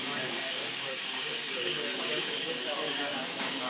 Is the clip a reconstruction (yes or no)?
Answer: yes